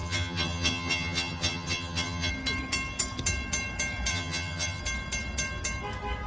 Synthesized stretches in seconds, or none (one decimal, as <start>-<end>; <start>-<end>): 0.0-2.3; 4.1-4.8